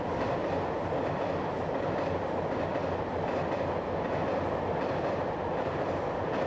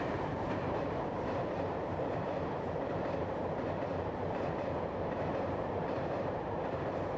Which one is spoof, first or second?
second